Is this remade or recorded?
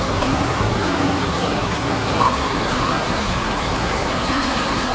remade